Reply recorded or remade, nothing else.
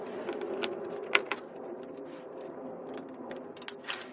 recorded